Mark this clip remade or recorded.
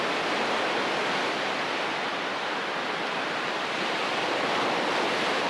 recorded